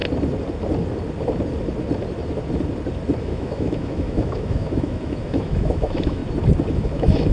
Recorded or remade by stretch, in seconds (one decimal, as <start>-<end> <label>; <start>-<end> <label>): 0.0-3.2 recorded; 3.2-6.2 remade; 6.2-6.7 recorded; 6.7-7.3 remade